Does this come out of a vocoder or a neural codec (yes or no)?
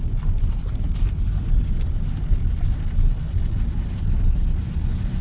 no